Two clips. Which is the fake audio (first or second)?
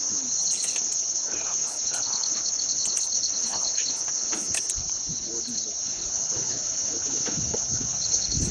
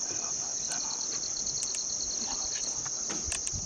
first